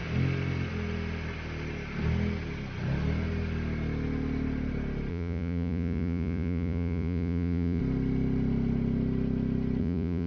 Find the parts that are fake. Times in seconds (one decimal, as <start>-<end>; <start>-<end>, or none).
5.1-7.8; 9.8-10.3